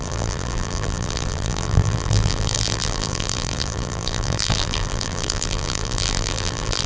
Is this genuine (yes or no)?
no